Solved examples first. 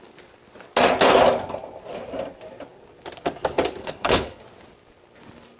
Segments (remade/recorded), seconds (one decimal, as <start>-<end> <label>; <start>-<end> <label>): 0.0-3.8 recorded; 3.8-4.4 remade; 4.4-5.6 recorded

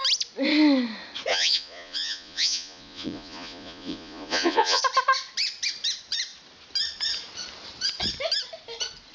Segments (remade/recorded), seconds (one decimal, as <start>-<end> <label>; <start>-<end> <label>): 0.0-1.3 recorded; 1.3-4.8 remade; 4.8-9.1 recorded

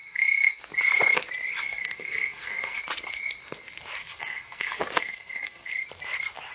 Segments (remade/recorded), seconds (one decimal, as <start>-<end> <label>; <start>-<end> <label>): 0.0-0.6 remade; 0.6-1.5 recorded; 1.5-2.8 remade; 2.8-4.0 recorded; 4.0-5.7 remade; 5.7-6.5 recorded

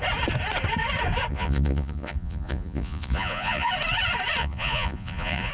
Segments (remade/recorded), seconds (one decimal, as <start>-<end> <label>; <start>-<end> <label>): 0.0-1.3 recorded; 1.3-3.7 remade; 3.7-4.4 recorded; 4.4-5.5 remade

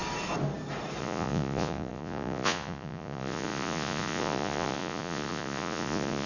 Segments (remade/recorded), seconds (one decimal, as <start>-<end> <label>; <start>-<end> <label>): 0.0-1.0 recorded; 1.0-6.3 remade